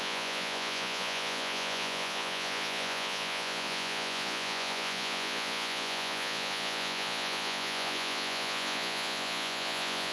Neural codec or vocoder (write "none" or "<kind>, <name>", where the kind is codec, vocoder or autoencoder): vocoder, Vocos